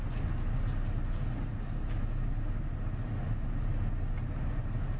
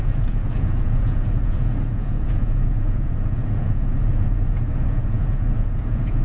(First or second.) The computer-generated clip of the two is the second